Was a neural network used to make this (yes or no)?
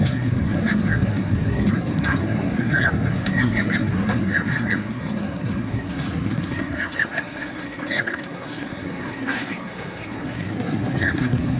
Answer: yes